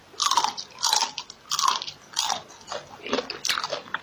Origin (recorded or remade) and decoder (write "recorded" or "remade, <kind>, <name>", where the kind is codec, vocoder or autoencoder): recorded